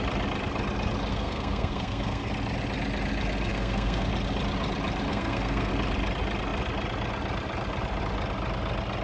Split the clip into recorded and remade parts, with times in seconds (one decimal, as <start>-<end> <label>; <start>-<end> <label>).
0.0-1.1 recorded; 1.1-2.3 remade; 2.3-3.5 recorded; 3.5-4.1 remade; 4.1-5.1 recorded; 5.1-5.7 remade; 5.7-9.0 recorded